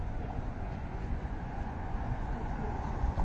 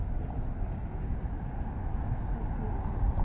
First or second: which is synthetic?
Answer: first